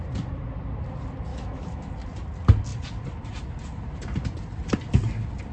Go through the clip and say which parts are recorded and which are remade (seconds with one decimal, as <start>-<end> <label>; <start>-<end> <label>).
0.0-1.3 recorded; 1.3-1.9 remade; 1.9-5.5 recorded